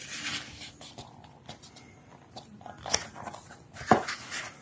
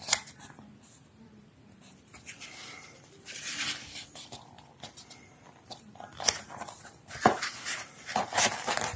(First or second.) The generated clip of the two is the second